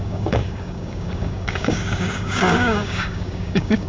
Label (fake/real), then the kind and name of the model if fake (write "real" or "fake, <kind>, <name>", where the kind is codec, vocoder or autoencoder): fake, codec, DAC